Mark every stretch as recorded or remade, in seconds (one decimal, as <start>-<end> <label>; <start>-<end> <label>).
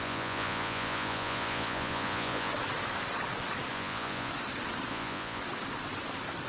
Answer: 0.0-2.5 remade; 2.5-3.7 recorded; 3.7-4.3 remade; 4.3-4.9 recorded; 4.9-5.4 remade; 5.4-6.5 recorded